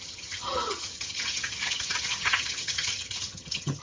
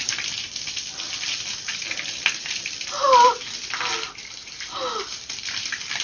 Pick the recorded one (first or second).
second